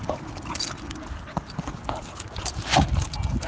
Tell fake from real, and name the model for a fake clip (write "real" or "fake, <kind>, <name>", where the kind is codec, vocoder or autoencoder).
real